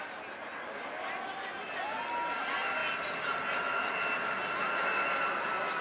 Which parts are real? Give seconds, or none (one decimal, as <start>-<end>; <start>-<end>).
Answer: 0.0-5.8